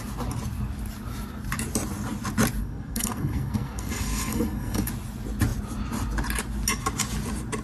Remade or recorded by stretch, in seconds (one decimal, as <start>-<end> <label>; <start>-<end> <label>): 0.0-2.6 recorded; 2.6-4.9 remade; 4.9-7.6 recorded